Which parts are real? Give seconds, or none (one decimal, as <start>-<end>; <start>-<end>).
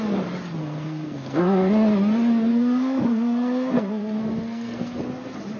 0.0-0.6; 1.7-2.5; 5.0-5.6